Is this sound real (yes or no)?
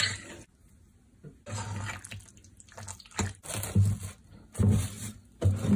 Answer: yes